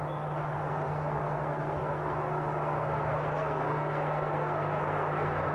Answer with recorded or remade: remade